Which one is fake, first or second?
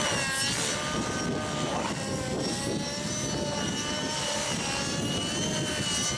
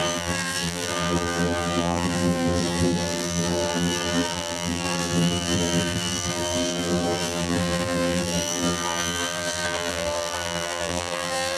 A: second